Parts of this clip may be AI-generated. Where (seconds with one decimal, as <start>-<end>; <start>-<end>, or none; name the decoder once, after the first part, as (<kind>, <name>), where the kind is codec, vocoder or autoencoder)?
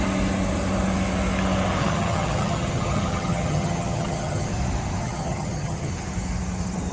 1.8-4.5 (vocoder, HiFi-GAN); 5.0-5.9